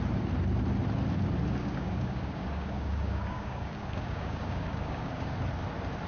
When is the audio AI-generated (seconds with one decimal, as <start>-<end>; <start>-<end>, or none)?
1.6-5.3